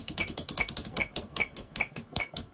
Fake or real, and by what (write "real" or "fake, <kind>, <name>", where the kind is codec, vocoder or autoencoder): fake, codec, SNAC